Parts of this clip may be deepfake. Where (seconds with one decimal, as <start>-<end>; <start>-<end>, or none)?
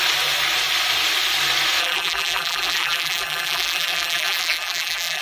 1.8-5.2